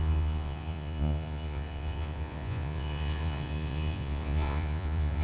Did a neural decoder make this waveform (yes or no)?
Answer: yes